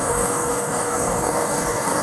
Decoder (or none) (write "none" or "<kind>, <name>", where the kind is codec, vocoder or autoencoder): codec, DAC